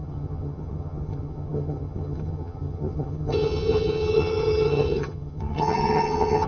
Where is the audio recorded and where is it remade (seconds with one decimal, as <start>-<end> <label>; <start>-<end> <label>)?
0.0-6.5 remade